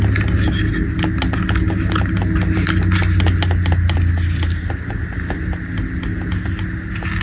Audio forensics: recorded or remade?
recorded